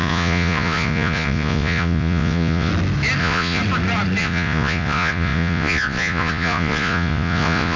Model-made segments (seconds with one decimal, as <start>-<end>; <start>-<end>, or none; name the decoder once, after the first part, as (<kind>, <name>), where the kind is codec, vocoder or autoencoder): 0.0-2.7 (vocoder, Vocos); 3.2-3.6; 4.2-7.8